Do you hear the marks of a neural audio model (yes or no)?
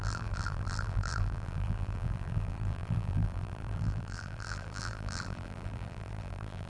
yes